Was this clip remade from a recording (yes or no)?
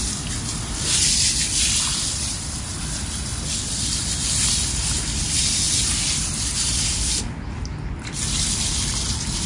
no